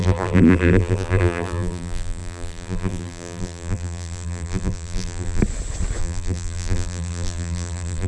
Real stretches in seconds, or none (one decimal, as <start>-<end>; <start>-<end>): 5.4-6.0